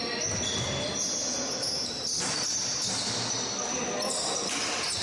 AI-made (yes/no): no